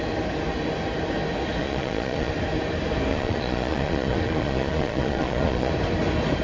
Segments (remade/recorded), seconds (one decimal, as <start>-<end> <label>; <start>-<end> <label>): 0.0-1.6 recorded; 1.6-2.3 remade; 2.3-3.1 recorded; 3.1-5.7 remade; 5.7-6.4 recorded